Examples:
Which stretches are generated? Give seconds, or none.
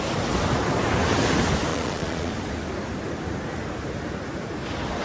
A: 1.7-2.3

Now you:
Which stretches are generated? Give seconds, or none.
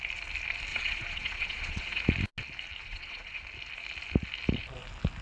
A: 0.7-2.0; 2.8-3.4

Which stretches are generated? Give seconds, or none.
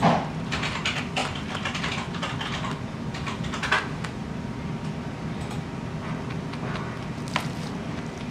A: none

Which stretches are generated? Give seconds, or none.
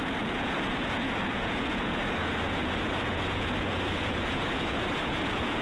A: 0.0-5.6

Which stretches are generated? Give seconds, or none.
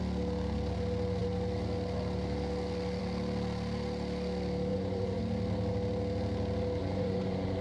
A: 4.7-5.2; 6.8-7.6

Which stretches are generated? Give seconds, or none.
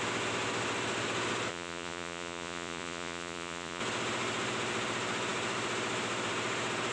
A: 1.5-3.8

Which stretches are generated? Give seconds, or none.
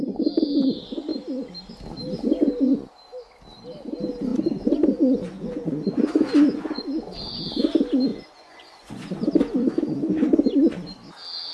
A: 4.3-7.4; 8.1-9.3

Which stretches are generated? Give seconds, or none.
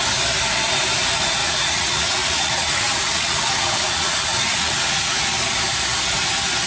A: 1.4-5.4